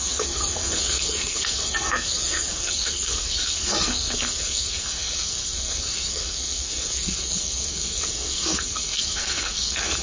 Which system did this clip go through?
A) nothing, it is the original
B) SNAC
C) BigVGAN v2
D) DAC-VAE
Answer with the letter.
B